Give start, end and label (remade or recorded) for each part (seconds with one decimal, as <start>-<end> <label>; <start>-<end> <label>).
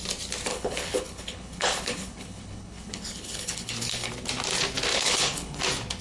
0.0-0.5 recorded; 0.5-4.1 remade; 4.1-4.9 recorded; 4.9-5.6 remade; 5.6-6.0 recorded